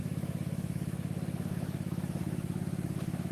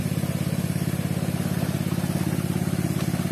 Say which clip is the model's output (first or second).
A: first